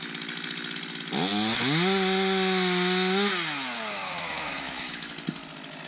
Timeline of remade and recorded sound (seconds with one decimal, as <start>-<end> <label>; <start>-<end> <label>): 0.0-4.0 recorded; 4.0-5.1 remade; 5.1-5.9 recorded